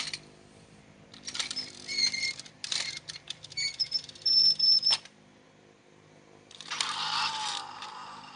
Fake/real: fake